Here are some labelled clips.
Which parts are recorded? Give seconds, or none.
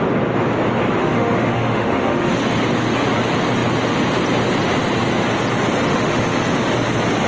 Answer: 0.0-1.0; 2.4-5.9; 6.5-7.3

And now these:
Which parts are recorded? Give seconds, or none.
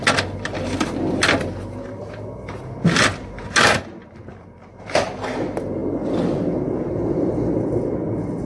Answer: 0.0-8.5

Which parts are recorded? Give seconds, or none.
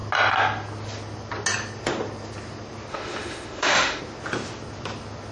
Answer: 0.0-2.9; 4.0-5.3